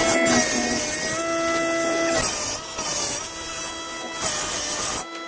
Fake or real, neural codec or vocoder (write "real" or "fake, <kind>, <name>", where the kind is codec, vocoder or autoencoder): real